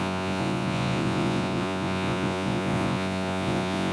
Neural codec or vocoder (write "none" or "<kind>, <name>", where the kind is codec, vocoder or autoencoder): vocoder, Vocos